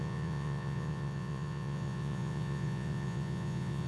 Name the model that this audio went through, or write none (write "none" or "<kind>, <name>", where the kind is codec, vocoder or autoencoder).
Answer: vocoder, Vocos